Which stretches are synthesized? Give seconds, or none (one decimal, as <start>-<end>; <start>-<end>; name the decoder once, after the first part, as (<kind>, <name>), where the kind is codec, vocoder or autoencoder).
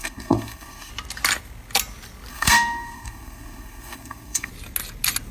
0.0-0.9 (codec, SNAC); 2.3-4.5